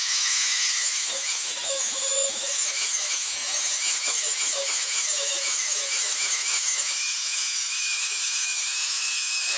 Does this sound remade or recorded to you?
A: remade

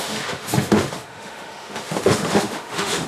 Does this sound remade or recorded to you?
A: remade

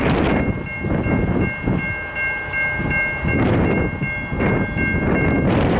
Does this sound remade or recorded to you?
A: recorded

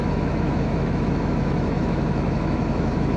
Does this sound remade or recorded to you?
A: remade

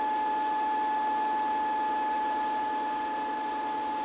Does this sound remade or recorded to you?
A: recorded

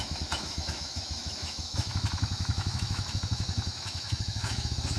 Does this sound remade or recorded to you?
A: remade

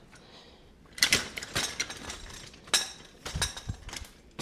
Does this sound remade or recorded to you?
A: recorded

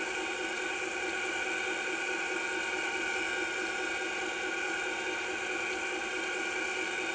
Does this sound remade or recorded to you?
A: recorded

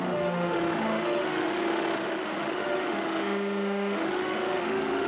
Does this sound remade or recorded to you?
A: remade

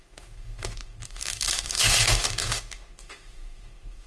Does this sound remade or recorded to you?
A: remade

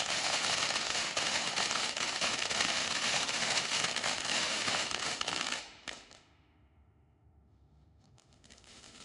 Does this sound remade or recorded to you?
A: remade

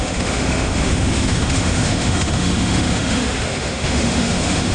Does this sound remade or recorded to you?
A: remade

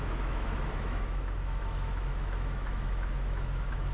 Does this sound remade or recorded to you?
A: remade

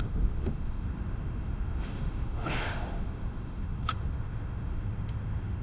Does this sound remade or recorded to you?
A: remade